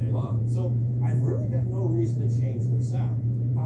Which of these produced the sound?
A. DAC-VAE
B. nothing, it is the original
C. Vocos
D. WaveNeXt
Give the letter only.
C